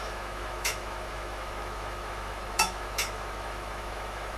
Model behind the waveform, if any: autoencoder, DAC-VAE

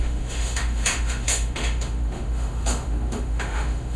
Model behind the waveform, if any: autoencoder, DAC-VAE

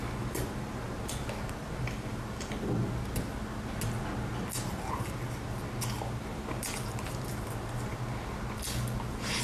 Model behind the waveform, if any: none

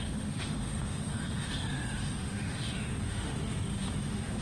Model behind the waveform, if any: autoencoder, DAC-VAE